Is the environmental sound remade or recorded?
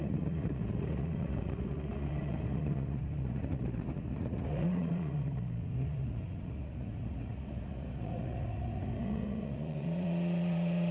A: remade